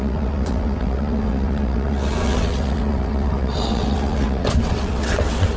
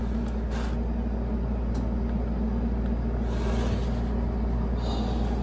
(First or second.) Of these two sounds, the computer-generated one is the first